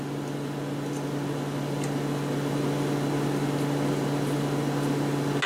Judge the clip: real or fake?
real